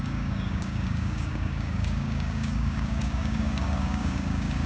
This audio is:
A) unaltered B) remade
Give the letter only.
B